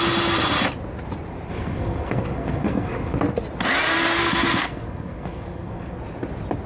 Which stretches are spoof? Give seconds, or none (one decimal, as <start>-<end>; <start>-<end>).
1.5-3.2; 4.2-6.0